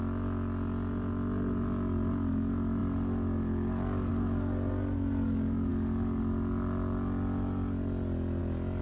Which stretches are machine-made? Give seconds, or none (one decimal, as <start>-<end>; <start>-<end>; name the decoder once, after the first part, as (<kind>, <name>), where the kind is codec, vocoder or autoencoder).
none